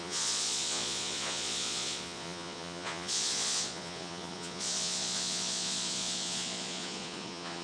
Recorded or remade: remade